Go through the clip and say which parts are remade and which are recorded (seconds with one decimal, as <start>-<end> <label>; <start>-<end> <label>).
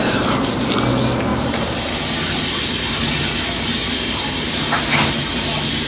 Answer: 0.0-5.9 recorded